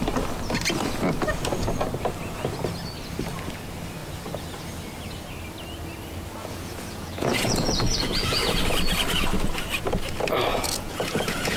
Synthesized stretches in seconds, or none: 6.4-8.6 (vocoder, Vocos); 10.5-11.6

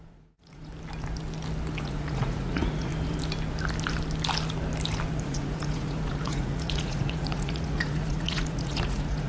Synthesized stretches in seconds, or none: 0.0-0.7 (vocoder, Vocos); 1.8-2.9; 5.2-9.3

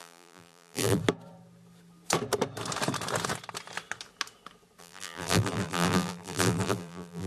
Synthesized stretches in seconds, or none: 0.0-1.0 (vocoder, BigVGAN v2); 4.8-7.3

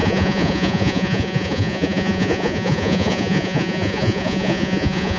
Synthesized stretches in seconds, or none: 0.0-5.2 (vocoder, Vocos)

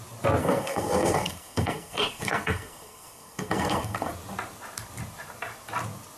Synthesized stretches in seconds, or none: 0.4-4.1 (codec, SNAC)